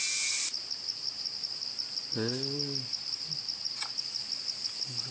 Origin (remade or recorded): recorded